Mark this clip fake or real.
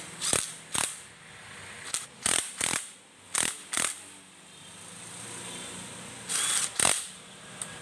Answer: real